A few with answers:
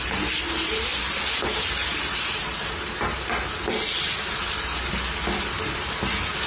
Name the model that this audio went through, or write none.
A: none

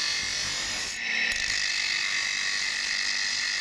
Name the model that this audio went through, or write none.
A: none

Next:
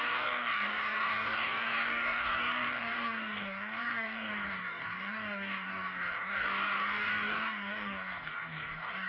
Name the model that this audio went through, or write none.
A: codec, DAC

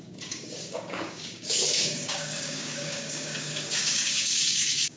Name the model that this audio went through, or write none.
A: codec, DAC